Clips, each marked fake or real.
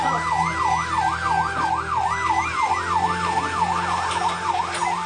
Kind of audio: real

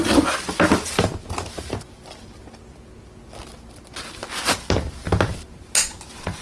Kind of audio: real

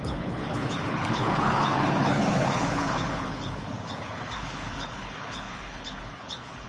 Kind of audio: fake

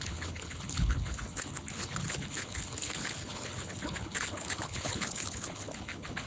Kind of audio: fake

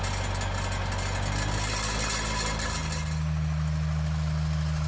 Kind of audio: real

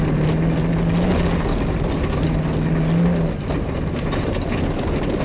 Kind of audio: real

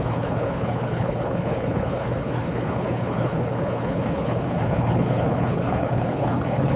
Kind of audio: fake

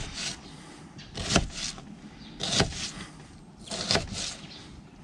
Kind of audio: real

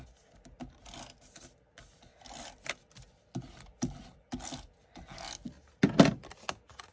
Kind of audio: real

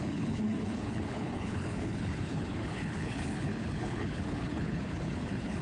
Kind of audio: fake